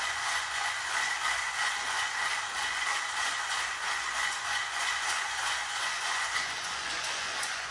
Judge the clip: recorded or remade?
remade